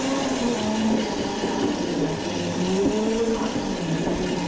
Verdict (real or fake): real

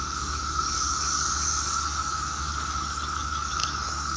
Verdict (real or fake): fake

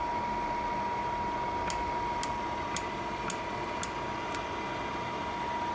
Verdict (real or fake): real